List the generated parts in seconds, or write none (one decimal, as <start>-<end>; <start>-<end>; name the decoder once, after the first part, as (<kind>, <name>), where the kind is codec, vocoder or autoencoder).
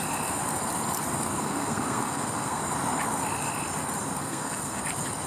1.4-2.6 (codec, SNAC); 4.2-4.8